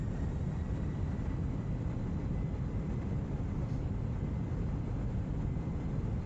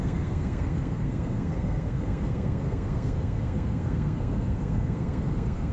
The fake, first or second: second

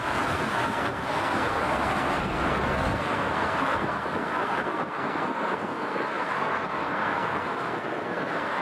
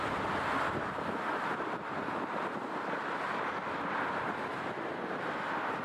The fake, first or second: first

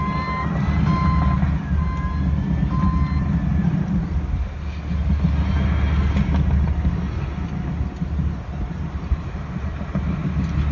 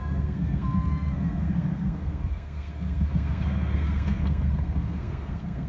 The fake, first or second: second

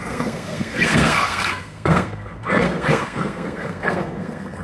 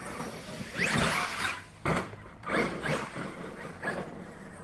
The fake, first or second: first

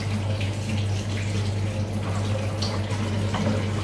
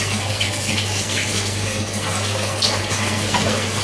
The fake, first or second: second